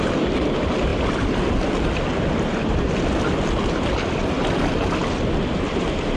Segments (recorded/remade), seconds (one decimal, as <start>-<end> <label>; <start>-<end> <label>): 0.0-6.2 recorded